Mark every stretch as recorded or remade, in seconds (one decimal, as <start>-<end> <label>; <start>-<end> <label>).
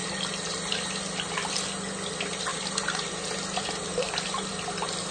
0.0-5.1 recorded